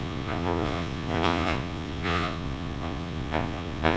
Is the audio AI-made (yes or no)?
yes